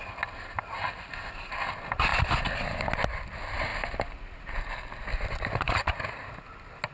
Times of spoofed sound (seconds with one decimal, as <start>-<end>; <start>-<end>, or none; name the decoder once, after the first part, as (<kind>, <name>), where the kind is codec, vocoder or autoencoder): none